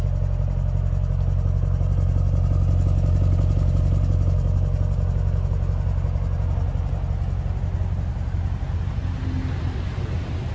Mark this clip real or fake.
real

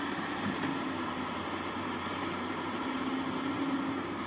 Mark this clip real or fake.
fake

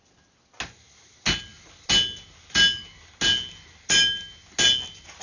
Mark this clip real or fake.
real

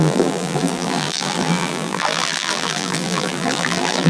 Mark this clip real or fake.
fake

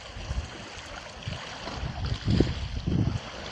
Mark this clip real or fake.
real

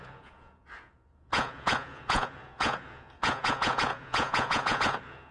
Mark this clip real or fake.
fake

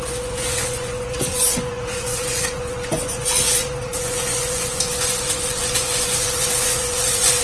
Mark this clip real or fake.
fake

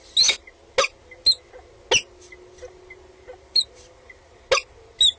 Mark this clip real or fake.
real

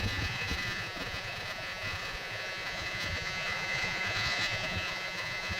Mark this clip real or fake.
fake